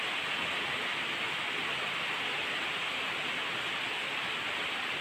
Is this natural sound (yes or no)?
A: yes